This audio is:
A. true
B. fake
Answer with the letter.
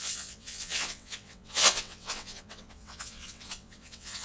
B